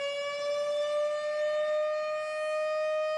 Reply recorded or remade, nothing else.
recorded